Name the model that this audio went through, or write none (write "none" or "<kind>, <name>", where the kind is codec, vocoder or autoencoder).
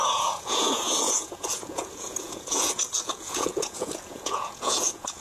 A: vocoder, Vocos